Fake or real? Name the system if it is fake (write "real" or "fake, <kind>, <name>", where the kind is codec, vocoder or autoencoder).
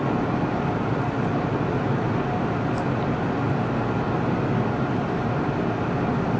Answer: real